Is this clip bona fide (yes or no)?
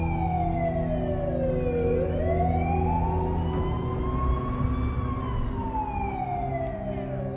yes